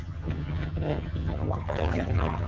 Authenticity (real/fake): fake